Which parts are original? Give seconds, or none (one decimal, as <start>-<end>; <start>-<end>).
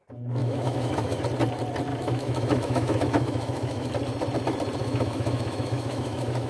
0.0-0.4; 1.2-1.9; 3.9-4.8